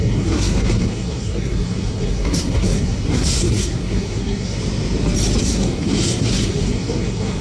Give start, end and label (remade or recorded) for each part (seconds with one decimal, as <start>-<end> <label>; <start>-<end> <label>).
0.0-4.6 remade; 4.6-5.4 recorded; 5.4-7.4 remade